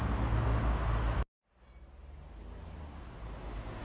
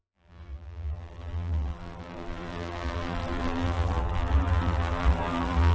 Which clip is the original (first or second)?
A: first